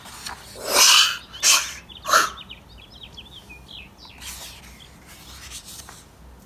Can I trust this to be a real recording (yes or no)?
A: yes